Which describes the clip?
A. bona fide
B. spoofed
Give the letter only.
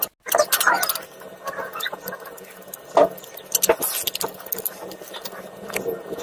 A